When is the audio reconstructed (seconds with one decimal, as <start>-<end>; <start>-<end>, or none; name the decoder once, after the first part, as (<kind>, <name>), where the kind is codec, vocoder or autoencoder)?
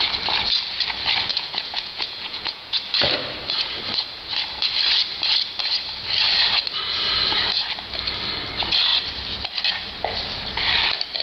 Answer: 1.3-2.8 (vocoder, Vocos)